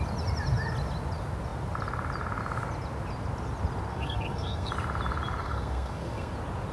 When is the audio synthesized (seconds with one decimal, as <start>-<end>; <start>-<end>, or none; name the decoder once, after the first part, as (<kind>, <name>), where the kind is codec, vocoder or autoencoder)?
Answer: 3.9-4.7 (codec, SNAC); 5.4-6.3